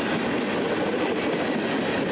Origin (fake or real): real